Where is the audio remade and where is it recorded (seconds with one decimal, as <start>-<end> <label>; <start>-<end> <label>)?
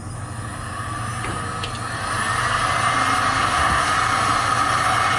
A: 0.0-3.4 recorded; 3.4-3.9 remade; 3.9-5.2 recorded